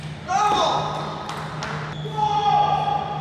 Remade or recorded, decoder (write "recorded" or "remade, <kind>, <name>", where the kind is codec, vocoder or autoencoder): recorded